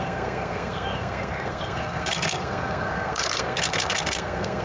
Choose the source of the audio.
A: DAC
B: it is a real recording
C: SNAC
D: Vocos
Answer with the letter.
C